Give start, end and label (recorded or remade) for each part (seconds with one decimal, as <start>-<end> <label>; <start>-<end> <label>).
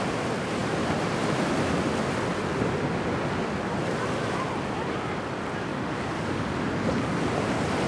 0.0-5.7 recorded; 5.7-7.2 remade; 7.2-7.9 recorded